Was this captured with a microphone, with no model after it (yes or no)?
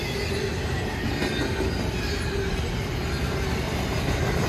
yes